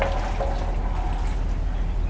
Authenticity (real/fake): real